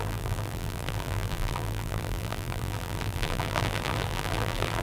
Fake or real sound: fake